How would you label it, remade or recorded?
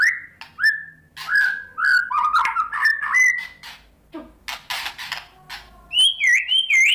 recorded